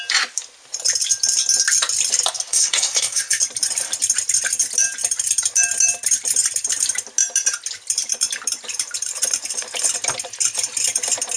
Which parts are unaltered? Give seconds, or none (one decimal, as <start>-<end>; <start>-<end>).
0.0-2.5; 3.4-11.4